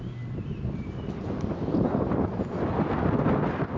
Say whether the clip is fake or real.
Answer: real